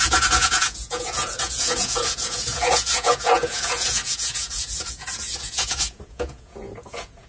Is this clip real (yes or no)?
no